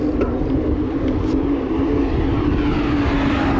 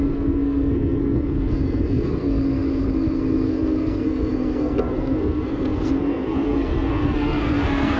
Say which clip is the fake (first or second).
second